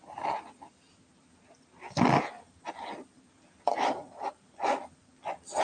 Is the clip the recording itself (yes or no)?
yes